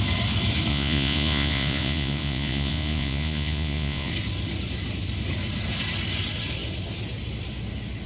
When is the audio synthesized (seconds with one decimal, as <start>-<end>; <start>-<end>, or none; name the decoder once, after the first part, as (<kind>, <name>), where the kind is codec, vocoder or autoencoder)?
0.7-4.1 (vocoder, Vocos)